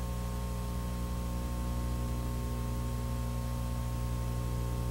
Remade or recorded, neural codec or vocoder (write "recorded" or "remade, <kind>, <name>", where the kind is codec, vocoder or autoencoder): recorded